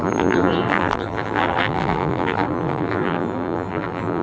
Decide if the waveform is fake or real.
fake